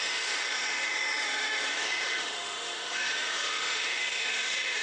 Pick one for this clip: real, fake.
fake